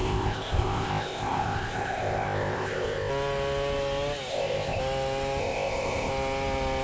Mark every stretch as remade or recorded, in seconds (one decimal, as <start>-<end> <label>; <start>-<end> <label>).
0.0-3.1 remade; 3.1-4.3 recorded; 4.3-4.8 remade; 4.8-5.4 recorded; 5.4-6.1 remade; 6.1-6.8 recorded

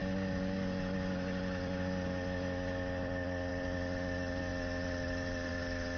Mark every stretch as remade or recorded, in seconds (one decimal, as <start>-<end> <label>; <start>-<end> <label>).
0.0-6.0 recorded

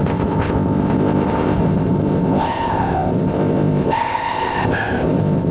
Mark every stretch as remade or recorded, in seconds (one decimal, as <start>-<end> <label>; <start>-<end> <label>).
0.0-5.5 remade

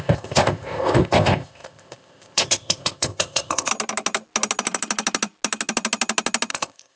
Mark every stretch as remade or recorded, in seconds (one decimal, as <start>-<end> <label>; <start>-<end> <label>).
0.0-3.7 remade; 3.7-6.5 recorded; 6.5-7.0 remade

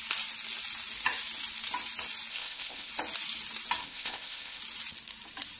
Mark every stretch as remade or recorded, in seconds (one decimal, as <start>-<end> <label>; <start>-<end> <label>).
0.0-2.3 recorded; 2.3-2.9 remade; 2.9-3.8 recorded; 3.8-4.6 remade; 4.6-5.6 recorded

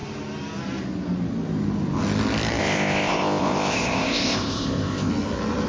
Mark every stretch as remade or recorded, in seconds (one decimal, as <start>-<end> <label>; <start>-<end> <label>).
0.0-2.6 recorded; 2.6-5.1 remade; 5.1-5.7 recorded

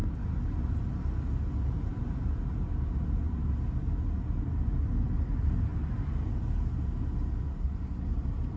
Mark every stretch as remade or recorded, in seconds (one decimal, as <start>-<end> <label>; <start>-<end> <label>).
0.0-8.6 recorded